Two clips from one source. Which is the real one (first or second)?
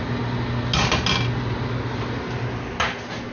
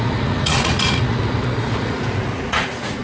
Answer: first